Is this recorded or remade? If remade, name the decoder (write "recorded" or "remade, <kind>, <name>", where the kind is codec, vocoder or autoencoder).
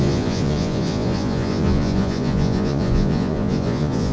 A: remade, vocoder, Vocos